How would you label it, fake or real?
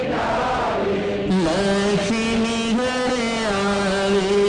real